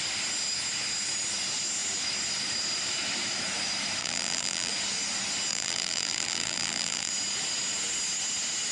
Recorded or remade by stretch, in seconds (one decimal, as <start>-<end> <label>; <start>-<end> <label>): 0.0-4.0 recorded; 4.0-4.7 remade; 4.7-5.5 recorded; 5.5-7.1 remade; 7.1-8.7 recorded